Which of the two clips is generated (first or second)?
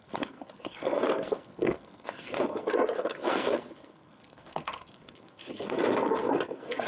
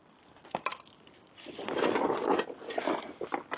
first